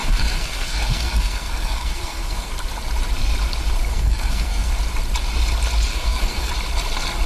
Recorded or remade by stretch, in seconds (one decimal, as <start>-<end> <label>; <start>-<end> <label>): 0.0-2.5 remade; 2.5-3.9 recorded; 3.9-4.7 remade; 4.7-5.9 recorded; 5.9-6.5 remade; 6.5-7.3 recorded